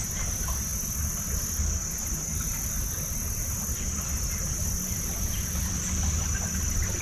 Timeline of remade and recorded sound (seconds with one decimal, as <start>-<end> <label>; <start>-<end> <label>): 0.0-7.0 recorded